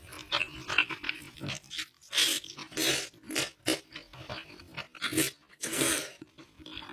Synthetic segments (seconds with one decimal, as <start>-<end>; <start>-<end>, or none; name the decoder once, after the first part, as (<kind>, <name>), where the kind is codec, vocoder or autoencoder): 5.5-6.1 (codec, SNAC)

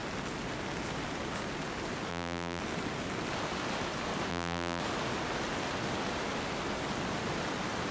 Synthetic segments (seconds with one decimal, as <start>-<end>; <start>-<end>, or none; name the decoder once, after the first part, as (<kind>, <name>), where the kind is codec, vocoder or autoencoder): 2.1-2.6 (vocoder, BigVGAN v2); 4.3-4.8

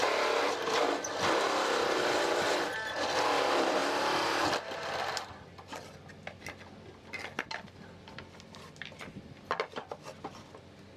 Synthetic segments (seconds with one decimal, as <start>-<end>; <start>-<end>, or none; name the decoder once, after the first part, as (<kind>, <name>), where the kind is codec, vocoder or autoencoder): none